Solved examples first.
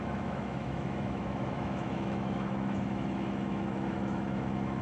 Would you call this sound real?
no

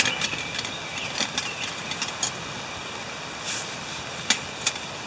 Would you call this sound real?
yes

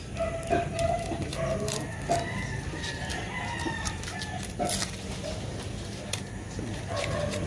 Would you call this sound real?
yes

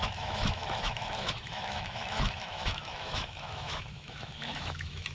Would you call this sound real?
no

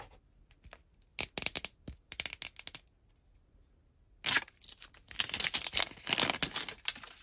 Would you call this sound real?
yes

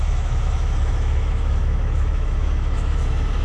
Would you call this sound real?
no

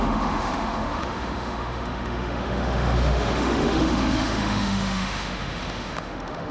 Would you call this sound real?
no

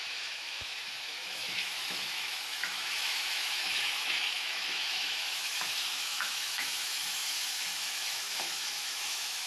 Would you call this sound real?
no